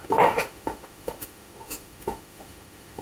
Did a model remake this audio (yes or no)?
yes